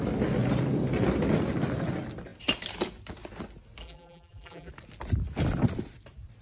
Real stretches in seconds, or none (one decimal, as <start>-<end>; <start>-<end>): 0.0-3.8; 4.7-6.4